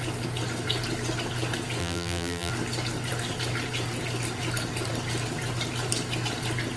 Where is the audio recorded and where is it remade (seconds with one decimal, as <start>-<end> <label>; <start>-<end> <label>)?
0.0-1.8 recorded; 1.8-2.5 remade; 2.5-6.8 recorded